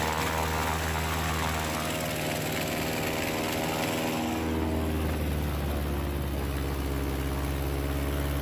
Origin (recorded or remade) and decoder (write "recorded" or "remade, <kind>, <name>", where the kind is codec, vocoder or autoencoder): recorded